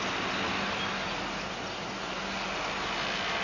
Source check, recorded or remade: recorded